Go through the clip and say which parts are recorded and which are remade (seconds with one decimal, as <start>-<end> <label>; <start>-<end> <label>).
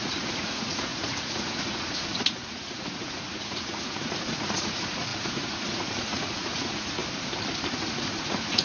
0.0-7.0 remade; 7.0-7.7 recorded; 7.7-8.6 remade